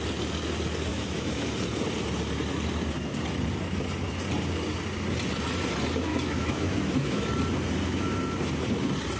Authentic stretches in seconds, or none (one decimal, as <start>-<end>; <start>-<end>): 0.0-0.9; 1.5-6.1; 7.2-9.2